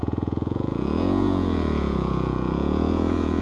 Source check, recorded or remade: remade